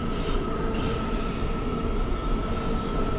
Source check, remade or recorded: recorded